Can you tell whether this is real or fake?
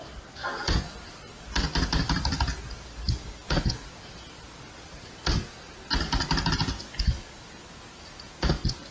real